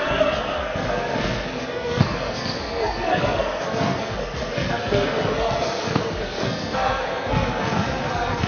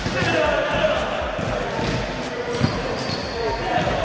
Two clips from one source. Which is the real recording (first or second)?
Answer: second